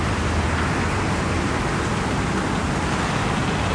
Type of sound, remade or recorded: recorded